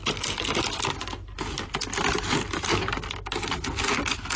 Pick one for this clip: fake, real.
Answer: real